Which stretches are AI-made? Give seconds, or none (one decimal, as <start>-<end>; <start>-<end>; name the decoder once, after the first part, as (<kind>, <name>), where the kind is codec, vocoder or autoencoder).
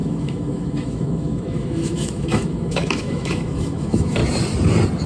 0.0-4.2 (autoencoder, DAC-VAE)